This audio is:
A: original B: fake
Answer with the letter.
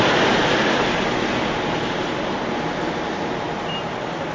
A